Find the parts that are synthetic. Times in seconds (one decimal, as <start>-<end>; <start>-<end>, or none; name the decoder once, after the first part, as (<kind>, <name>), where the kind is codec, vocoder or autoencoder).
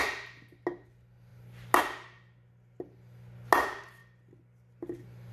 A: none